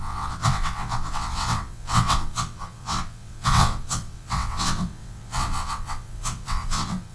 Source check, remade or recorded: remade